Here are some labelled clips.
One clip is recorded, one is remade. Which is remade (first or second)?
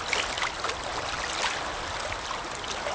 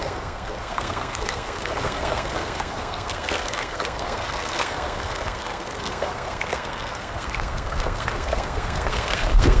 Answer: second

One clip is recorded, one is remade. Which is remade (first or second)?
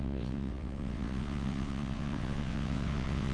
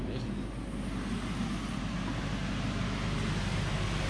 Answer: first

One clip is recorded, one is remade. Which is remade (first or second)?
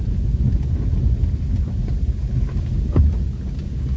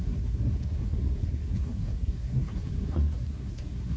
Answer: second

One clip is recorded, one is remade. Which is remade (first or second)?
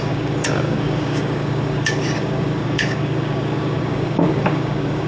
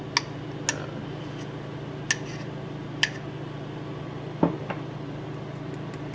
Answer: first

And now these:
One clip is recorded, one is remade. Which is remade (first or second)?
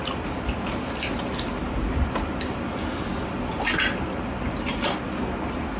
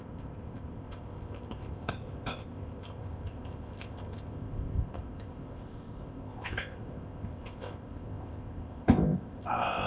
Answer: second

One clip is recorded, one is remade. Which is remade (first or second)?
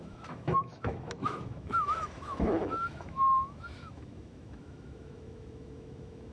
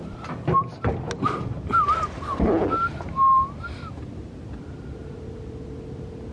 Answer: first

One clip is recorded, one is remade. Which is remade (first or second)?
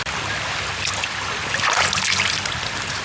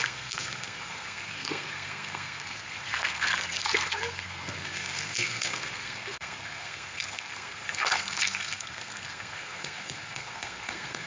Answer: second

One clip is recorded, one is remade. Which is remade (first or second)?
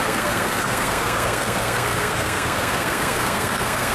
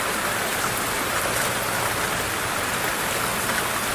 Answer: first